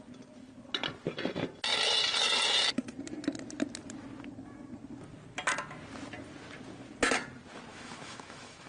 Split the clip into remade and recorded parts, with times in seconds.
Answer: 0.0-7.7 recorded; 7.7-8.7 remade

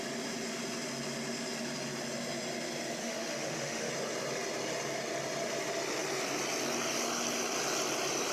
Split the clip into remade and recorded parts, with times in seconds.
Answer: 0.0-3.0 recorded; 3.0-3.9 remade; 3.9-8.3 recorded

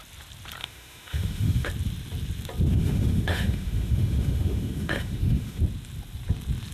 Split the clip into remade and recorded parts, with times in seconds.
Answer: 0.0-0.6 recorded; 0.6-1.7 remade; 1.7-2.7 recorded; 2.7-5.6 remade; 5.6-6.7 recorded

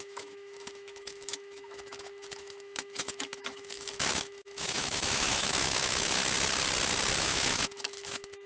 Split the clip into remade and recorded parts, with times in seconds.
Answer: 0.0-6.2 remade; 6.2-7.2 recorded; 7.2-8.5 remade